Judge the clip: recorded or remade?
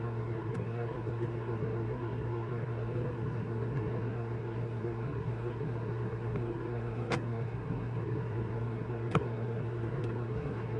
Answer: remade